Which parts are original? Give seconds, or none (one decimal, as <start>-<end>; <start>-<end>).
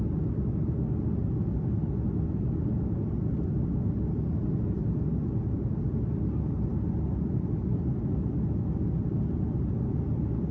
0.0-10.5